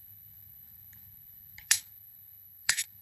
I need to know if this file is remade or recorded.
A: remade